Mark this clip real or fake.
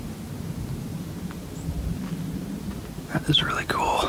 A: real